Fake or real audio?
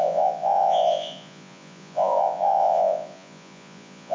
fake